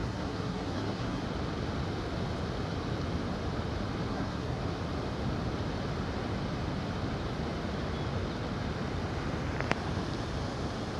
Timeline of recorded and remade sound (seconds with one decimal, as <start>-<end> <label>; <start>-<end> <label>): 0.0-1.2 remade; 1.2-4.1 recorded; 4.1-4.6 remade; 4.6-11.0 recorded